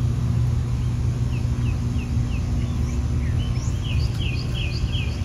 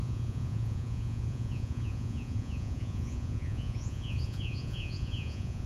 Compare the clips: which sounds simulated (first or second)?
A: second